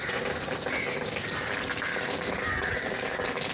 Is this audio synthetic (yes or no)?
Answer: no